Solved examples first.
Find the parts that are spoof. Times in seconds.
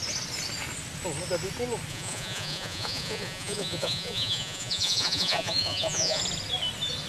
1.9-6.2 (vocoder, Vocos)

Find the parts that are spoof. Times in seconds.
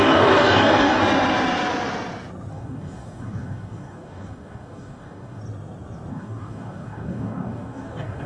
0.0-1.0 (codec, DAC); 2.5-5.4; 6.1-8.3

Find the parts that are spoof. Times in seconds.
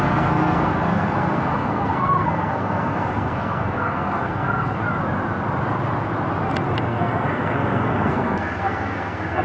0.0-4.8 (codec, SNAC); 6.8-9.4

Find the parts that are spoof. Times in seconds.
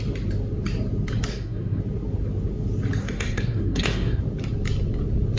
1.3-1.8 (codec, SNAC); 3.0-4.2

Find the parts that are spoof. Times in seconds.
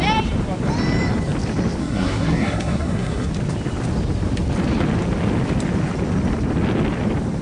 1.8-3.3 (codec, SNAC)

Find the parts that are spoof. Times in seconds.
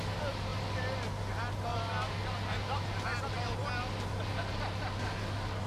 none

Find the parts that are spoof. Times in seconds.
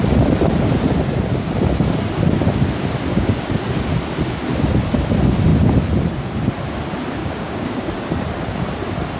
3.1-3.6 (codec, DAC); 7.2-7.9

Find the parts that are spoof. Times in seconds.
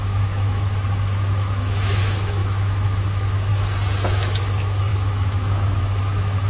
0.0-3.5 (autoencoder, DAC-VAE); 4.1-6.5